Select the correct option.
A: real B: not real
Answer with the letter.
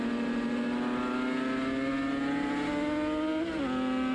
A